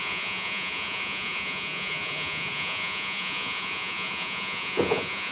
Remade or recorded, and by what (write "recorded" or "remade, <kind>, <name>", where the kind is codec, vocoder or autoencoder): remade, vocoder, Vocos